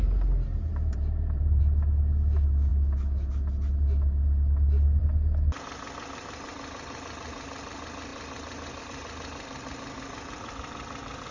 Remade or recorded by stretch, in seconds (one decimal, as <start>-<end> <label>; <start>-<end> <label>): 0.0-0.7 recorded; 0.7-1.6 remade; 1.6-11.3 recorded